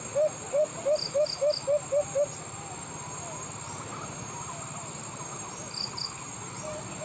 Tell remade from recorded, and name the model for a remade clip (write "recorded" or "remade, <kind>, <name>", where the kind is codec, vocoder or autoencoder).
recorded